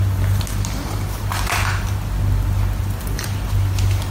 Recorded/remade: recorded